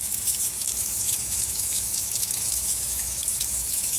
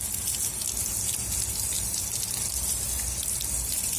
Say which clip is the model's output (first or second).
first